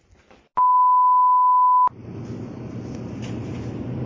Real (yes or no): yes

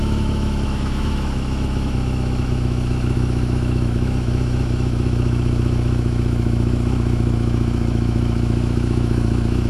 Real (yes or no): no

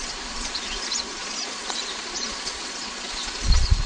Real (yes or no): no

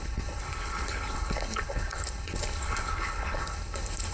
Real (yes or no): no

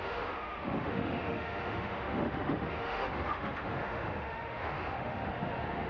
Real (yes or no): no